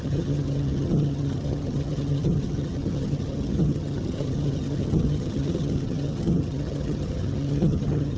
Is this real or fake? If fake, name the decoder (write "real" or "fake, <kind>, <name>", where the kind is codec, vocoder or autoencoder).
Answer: fake, vocoder, HiFi-GAN